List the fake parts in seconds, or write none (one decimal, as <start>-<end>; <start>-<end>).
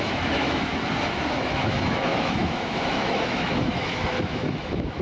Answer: 0.0-0.7; 1.4-5.0